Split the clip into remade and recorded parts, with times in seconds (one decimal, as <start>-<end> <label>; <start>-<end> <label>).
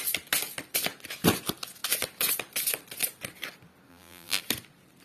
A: 0.0-3.9 recorded; 3.9-4.4 remade; 4.4-5.0 recorded